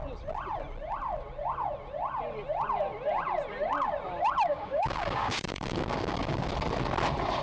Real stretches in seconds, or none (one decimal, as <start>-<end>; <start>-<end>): 0.0-4.5; 6.5-7.4